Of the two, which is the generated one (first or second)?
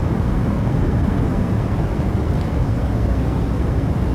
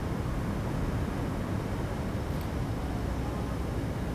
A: first